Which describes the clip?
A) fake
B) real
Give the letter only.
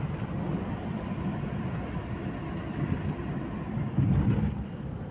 B